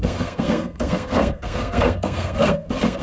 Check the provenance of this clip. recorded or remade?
remade